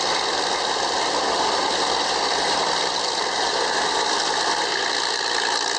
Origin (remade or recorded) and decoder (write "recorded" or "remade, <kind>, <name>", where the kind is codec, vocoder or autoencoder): recorded